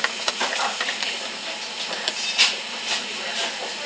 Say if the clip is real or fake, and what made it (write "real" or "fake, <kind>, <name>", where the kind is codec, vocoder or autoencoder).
real